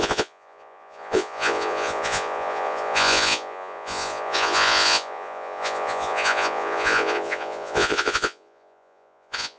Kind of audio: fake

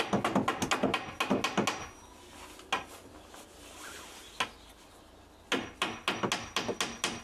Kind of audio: real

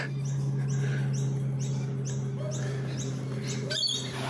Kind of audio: real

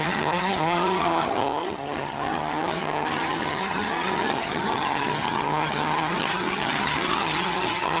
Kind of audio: fake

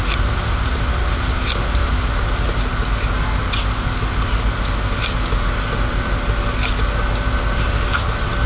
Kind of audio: real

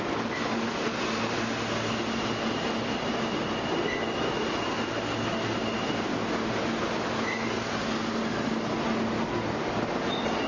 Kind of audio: real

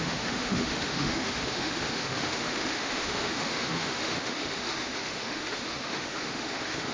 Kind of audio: fake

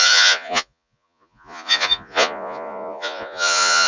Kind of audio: fake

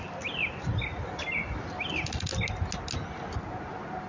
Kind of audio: real